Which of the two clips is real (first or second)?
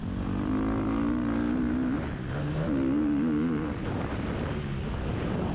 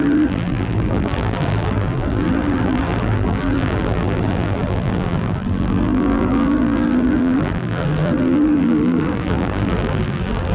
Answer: first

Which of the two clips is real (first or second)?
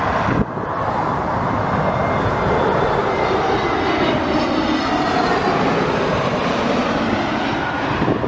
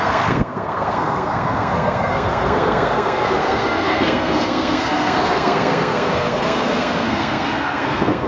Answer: first